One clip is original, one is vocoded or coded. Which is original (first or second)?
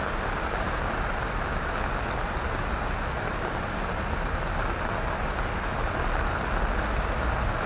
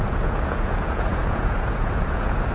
first